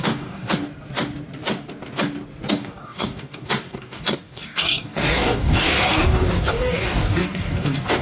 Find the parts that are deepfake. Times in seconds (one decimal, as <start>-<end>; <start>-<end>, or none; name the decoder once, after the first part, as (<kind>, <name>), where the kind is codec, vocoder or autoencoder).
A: 0.0-0.6 (codec, DAC); 2.5-8.0